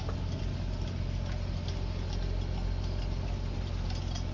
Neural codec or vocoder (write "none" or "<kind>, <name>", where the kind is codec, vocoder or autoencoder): none